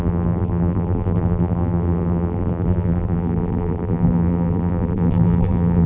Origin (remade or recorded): remade